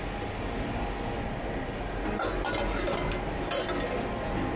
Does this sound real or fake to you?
real